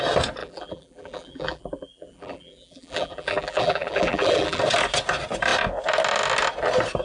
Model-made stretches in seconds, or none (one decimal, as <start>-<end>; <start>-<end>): 0.4-4.6